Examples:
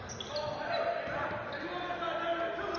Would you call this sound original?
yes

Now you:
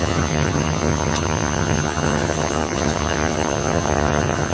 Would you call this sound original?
no